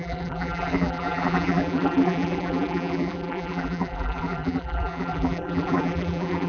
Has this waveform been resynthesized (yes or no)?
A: yes